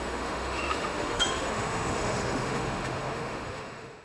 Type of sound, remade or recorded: remade